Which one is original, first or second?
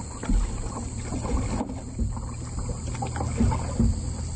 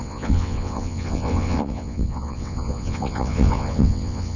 first